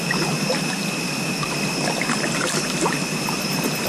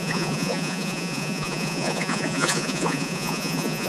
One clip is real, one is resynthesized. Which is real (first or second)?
first